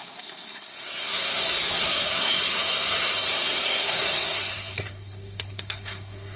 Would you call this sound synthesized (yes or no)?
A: yes